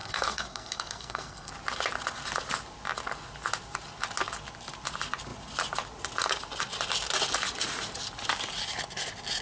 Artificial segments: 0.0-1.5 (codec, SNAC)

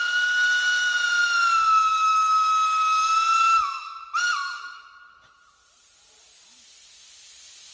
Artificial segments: none